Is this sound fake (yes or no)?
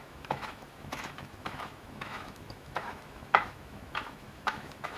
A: yes